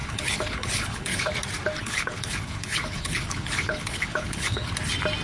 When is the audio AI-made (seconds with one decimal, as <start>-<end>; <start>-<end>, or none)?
0.0-1.3; 1.8-4.7